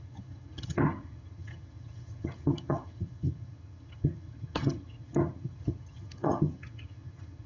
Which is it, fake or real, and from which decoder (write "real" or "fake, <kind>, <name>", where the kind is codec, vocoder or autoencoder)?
fake, vocoder, HiFi-GAN